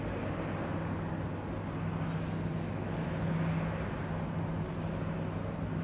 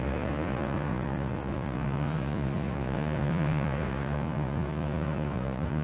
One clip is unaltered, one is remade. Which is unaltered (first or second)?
first